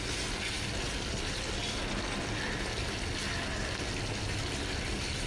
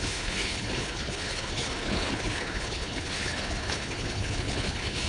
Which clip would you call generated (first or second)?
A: second